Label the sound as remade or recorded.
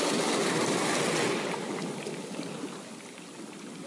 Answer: recorded